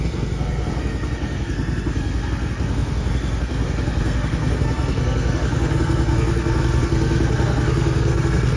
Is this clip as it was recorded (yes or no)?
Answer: no